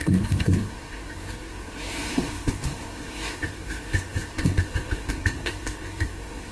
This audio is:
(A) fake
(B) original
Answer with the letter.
A